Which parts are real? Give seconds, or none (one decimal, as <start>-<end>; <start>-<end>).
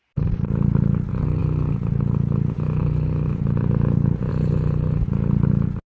0.0-5.9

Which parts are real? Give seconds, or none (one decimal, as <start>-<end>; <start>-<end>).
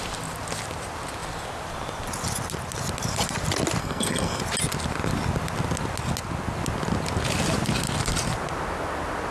0.0-3.8; 4.4-9.3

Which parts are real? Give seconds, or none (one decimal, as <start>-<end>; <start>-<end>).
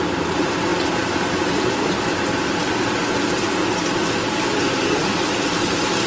0.0-6.1